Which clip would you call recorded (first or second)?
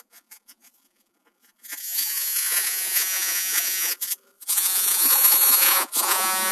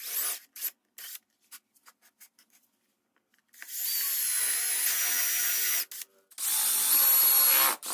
second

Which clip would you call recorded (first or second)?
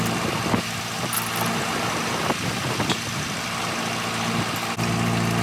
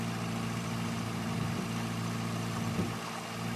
first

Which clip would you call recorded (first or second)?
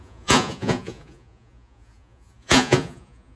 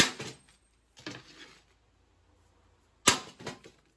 second